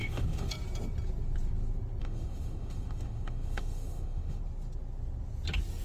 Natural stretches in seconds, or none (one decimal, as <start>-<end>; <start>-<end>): 0.5-2.0; 4.4-5.8